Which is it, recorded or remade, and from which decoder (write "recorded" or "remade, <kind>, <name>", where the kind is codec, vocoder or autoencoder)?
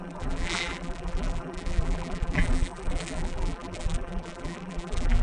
remade, vocoder, BigVGAN v2